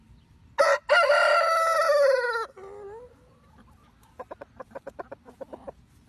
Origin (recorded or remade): recorded